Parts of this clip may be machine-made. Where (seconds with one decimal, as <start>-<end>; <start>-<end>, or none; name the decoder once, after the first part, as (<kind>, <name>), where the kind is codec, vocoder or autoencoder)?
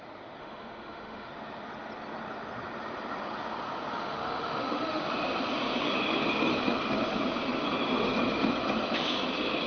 0.4-1.3 (autoencoder, DAC-VAE); 3.9-5.0